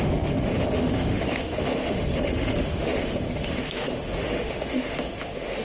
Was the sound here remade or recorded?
remade